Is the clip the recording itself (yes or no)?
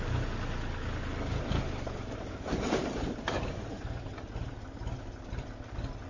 yes